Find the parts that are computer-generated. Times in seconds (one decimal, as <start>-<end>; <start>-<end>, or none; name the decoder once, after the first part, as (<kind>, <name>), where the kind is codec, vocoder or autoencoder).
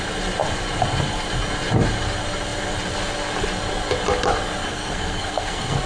4.6-5.9 (codec, SNAC)